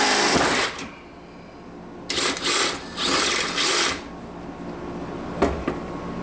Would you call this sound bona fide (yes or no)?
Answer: yes